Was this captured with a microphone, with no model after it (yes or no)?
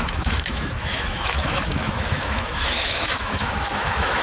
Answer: no